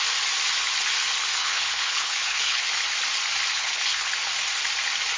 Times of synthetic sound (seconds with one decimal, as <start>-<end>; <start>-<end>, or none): 1.4-2.7; 3.5-4.1

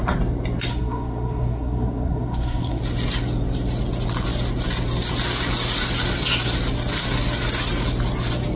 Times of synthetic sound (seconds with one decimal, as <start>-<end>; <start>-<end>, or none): 0.7-2.8

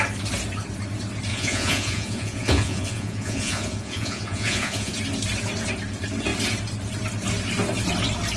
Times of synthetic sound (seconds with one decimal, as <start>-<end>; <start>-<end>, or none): 1.3-4.9

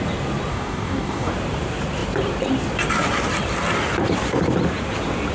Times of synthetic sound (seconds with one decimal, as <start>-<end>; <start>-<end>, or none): 0.5-1.3

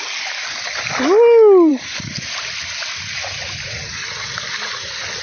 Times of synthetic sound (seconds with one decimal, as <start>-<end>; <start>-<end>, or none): none

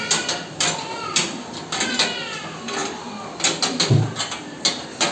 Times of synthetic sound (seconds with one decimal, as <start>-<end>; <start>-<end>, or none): none